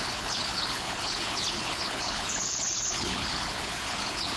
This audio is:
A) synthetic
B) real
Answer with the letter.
A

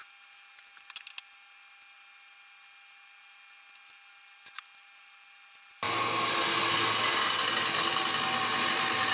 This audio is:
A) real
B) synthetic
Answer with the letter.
A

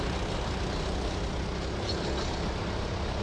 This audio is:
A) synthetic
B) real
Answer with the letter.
B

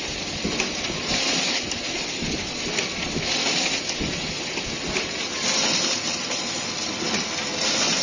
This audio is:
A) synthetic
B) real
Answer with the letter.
B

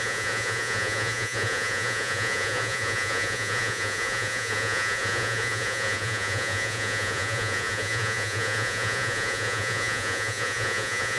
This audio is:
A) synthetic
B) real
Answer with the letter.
A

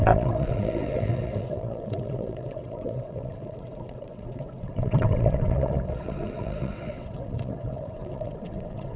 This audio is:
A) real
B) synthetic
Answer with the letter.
B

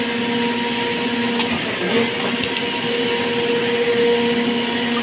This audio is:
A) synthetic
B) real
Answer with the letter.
B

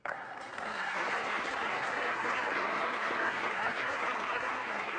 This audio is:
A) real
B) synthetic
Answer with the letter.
B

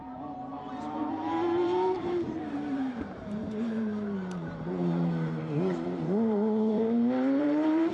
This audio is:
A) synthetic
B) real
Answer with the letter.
A